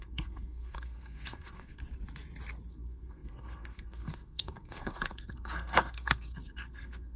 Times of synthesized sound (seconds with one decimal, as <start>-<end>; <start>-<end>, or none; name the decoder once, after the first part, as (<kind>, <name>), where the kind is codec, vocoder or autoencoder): 0.0-1.8 (codec, SNAC); 2.7-7.2